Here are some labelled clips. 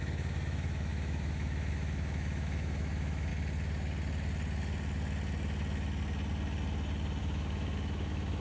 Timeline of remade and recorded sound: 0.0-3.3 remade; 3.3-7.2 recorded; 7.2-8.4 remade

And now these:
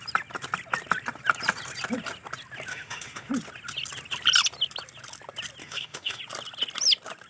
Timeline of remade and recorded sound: 0.0-2.7 recorded; 2.7-3.3 remade; 3.3-5.6 recorded; 5.6-6.2 remade; 6.2-7.3 recorded

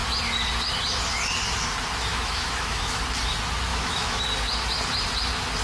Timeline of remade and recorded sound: 0.0-2.1 recorded; 2.1-3.0 remade; 3.0-3.7 recorded; 3.7-4.2 remade; 4.2-5.6 recorded

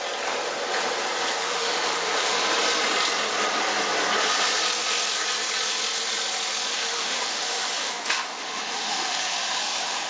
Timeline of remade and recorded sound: 0.0-1.4 recorded; 1.4-2.4 remade; 2.4-6.8 recorded; 6.8-10.1 remade

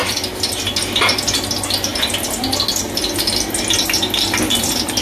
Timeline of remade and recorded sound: 0.0-5.0 recorded